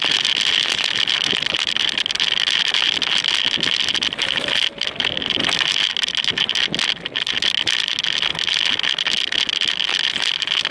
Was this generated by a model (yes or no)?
no